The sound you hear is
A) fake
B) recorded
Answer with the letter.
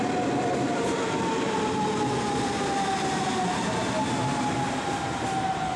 B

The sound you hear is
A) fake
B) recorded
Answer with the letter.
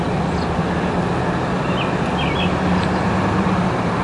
B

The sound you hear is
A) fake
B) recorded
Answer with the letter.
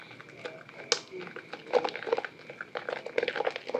B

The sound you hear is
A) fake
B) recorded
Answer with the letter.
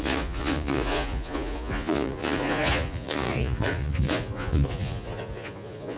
A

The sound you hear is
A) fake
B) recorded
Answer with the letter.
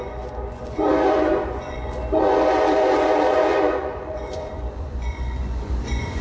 A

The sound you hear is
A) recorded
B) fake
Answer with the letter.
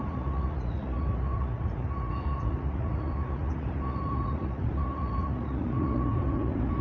B